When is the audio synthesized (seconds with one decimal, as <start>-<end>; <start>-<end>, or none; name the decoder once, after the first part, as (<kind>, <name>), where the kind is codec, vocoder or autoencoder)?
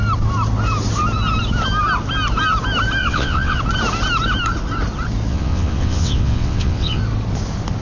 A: 3.0-3.6 (vocoder, WaveNeXt); 5.3-7.0